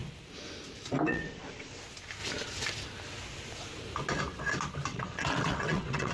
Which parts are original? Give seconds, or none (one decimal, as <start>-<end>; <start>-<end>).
0.0-1.1; 1.8-4.9